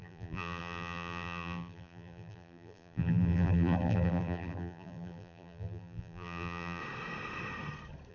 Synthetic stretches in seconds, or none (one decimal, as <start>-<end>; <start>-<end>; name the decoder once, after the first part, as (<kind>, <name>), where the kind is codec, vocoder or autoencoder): 0.0-6.8 (vocoder, BigVGAN v2)